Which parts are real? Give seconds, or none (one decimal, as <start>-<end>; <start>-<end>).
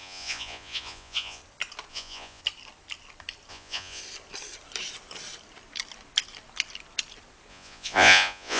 1.4-1.9; 2.4-3.5; 4.0-7.5